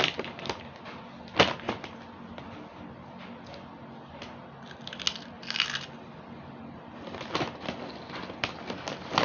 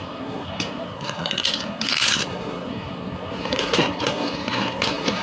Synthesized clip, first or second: second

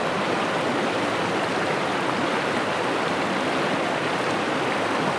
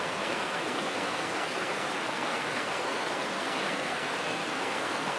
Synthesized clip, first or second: second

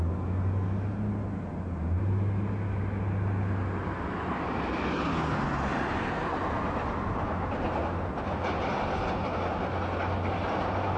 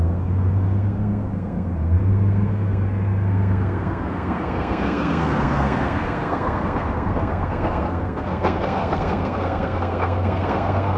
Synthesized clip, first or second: second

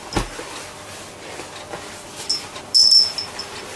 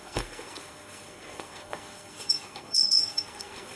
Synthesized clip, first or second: second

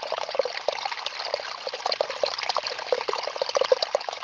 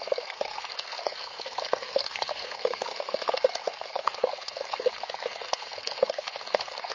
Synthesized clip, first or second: second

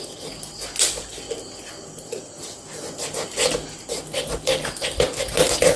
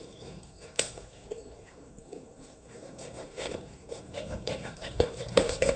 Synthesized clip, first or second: second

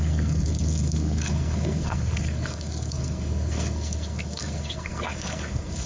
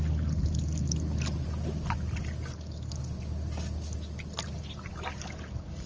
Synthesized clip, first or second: first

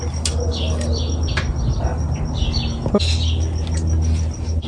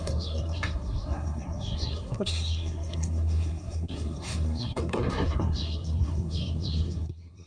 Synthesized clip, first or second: second